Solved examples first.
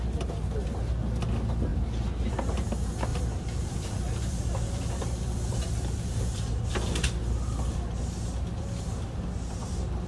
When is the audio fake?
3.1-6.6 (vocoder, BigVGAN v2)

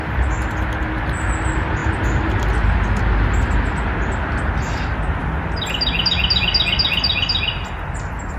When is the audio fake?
none

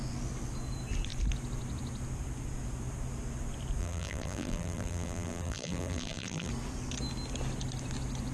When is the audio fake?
3.8-6.5 (vocoder, BigVGAN v2)